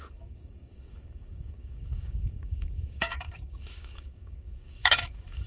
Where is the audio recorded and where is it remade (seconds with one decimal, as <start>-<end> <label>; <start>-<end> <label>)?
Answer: 0.0-5.5 remade